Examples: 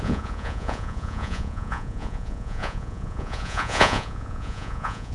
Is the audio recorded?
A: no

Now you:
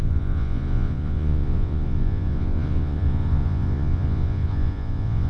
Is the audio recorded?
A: no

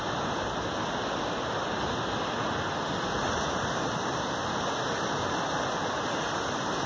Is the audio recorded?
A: yes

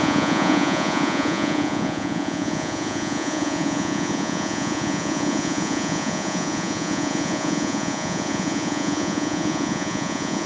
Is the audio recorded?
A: no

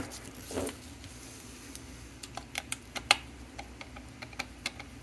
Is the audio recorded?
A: yes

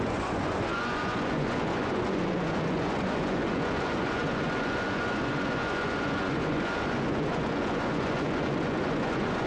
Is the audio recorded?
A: no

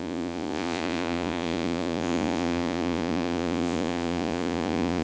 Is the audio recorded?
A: no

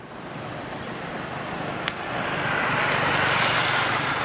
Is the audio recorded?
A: yes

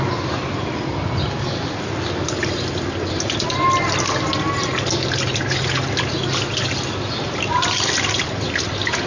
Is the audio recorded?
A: yes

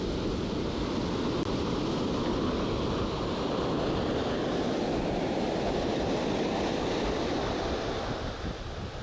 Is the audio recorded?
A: yes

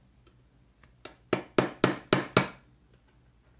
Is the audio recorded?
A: yes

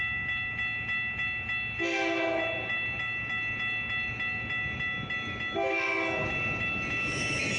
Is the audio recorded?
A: yes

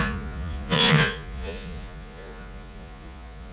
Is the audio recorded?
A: no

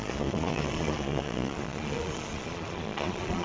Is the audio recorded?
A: no